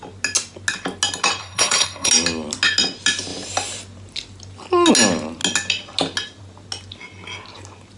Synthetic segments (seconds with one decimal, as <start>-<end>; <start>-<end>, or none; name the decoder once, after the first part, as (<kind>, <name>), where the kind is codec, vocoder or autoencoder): 1.4-2.1 (codec, SNAC)